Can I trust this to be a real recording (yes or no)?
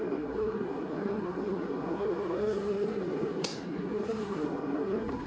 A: no